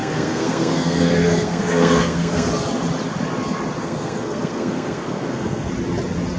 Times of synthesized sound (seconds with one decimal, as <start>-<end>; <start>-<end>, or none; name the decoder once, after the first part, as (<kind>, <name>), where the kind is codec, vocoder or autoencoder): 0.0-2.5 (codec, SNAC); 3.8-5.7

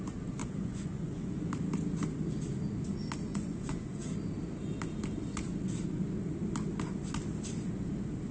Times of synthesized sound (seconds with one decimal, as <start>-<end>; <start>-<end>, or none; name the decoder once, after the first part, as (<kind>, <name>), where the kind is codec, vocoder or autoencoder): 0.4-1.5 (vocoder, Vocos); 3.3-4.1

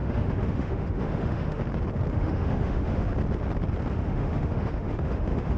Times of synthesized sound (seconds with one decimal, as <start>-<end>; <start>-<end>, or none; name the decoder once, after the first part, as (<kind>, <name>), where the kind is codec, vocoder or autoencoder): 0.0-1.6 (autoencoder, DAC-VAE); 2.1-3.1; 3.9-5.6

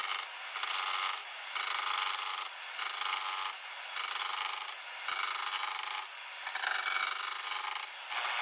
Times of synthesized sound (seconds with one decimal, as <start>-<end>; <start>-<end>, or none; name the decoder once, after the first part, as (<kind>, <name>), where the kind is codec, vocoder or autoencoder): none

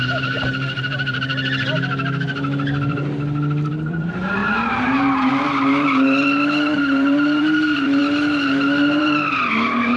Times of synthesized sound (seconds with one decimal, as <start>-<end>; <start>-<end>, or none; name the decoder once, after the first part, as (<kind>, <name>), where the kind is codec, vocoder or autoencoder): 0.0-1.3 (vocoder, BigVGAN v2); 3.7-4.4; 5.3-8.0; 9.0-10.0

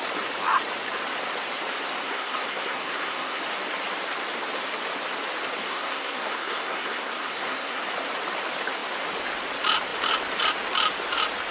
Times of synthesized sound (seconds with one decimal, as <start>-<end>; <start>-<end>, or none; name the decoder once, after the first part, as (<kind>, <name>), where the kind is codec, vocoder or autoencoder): 2.0-3.4 (codec, SNAC); 5.6-7.8